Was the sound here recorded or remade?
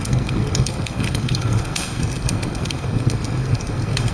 remade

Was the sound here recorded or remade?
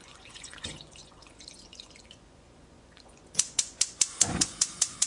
remade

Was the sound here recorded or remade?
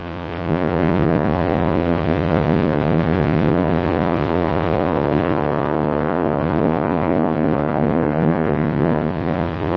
remade